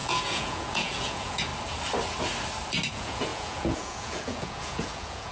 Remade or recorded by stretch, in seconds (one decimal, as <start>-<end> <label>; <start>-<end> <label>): 0.0-1.5 remade; 1.5-2.9 recorded; 2.9-5.3 remade